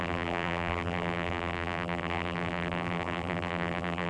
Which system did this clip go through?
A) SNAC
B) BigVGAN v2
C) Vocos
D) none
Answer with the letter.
B